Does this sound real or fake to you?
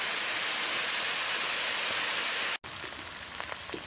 real